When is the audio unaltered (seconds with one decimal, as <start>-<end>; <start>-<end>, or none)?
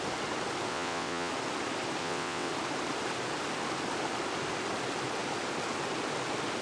0.0-0.7; 1.3-2.0; 2.5-6.6